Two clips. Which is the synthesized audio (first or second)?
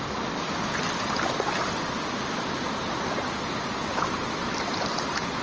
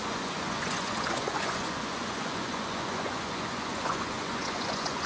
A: second